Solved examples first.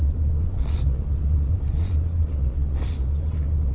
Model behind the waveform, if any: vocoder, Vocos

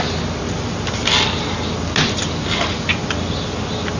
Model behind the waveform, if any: none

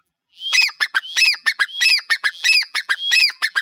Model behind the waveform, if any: vocoder, BigVGAN v2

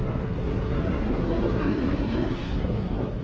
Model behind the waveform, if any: codec, SNAC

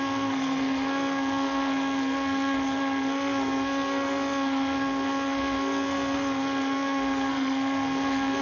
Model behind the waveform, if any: codec, SNAC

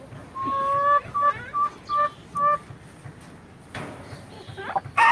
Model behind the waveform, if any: none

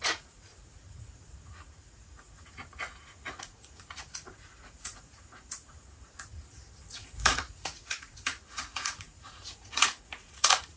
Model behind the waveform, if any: vocoder, Vocos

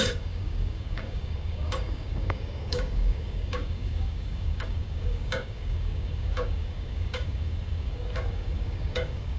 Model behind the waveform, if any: codec, DAC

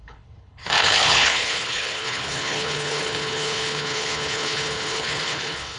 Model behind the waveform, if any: codec, HILCodec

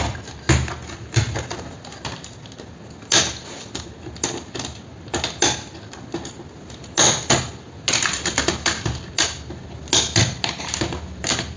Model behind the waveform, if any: none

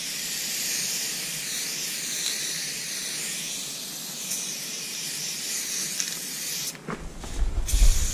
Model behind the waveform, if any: none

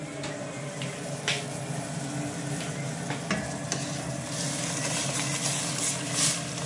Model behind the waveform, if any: none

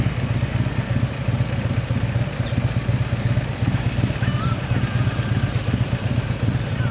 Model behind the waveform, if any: none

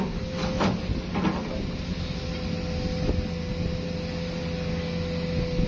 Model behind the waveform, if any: none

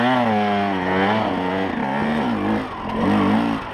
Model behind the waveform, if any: none